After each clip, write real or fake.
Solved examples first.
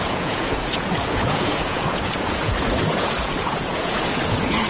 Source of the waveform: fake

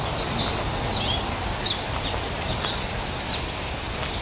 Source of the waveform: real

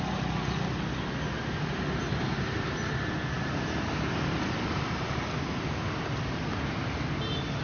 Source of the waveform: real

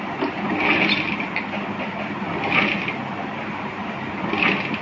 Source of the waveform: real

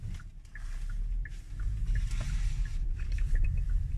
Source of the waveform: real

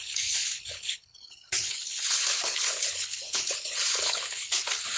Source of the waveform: fake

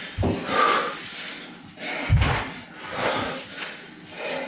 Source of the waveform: fake